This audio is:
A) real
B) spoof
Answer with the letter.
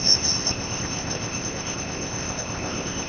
B